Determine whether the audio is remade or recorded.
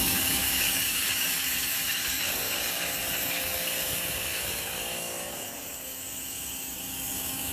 remade